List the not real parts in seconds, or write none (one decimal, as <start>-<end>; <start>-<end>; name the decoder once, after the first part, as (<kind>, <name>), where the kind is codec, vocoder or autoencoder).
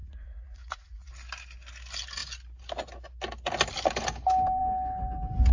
0.0-1.1 (vocoder, Vocos)